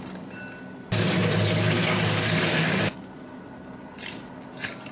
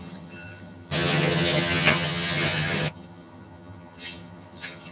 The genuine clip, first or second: first